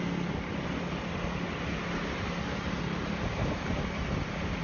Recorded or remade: recorded